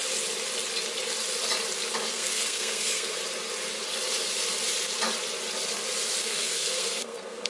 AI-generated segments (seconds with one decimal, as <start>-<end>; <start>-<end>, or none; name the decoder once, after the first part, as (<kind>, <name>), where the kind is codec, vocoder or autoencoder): 2.1-3.2 (codec, SNAC); 6.2-7.5